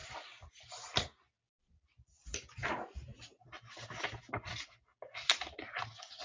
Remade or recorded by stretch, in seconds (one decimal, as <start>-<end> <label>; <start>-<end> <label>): 0.0-6.2 recorded